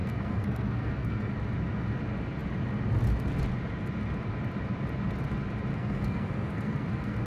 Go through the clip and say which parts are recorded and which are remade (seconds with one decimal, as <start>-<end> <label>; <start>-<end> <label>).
0.0-1.3 remade; 1.3-5.7 recorded; 5.7-7.3 remade